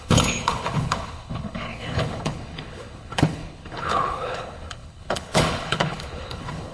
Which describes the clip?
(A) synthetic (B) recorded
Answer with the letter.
A